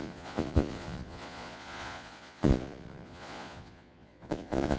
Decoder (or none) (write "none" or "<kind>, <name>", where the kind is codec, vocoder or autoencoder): vocoder, Vocos